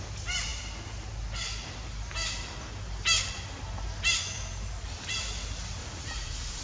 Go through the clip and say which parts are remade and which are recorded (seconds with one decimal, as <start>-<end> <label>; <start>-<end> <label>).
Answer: 0.0-5.8 recorded; 5.8-6.6 remade